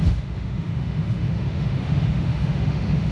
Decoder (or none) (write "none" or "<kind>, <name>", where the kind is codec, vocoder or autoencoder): autoencoder, DAC-VAE